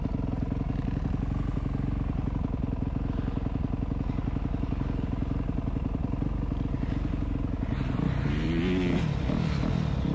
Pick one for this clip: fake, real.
real